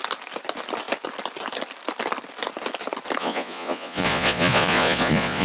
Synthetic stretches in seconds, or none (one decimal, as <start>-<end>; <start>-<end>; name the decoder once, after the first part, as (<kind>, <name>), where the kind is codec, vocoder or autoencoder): 3.2-5.4 (vocoder, Vocos)